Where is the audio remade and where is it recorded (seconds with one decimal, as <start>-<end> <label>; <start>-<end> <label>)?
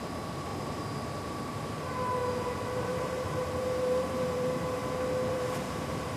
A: 0.0-0.5 remade; 0.5-1.2 recorded; 1.2-2.2 remade; 2.2-2.8 recorded; 2.8-4.8 remade; 4.8-5.3 recorded; 5.3-6.2 remade